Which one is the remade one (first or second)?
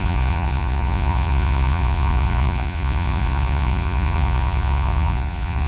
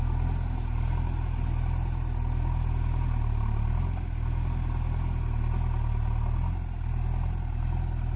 first